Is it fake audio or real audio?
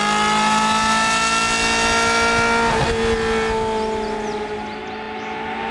real